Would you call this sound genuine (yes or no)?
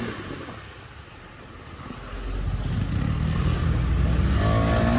yes